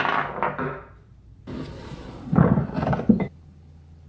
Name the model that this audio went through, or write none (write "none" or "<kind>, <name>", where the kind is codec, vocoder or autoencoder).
none